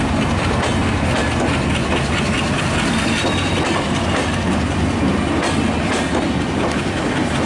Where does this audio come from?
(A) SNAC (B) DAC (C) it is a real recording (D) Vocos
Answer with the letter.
C